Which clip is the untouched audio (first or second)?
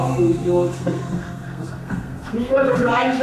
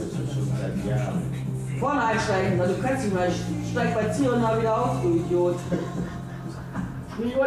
second